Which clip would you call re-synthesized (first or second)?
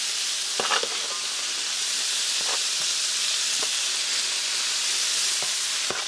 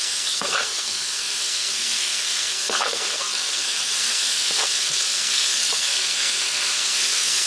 second